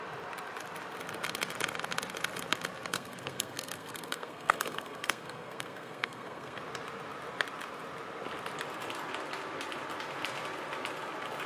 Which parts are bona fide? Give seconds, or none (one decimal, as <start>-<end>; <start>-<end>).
0.0-2.9; 6.6-11.5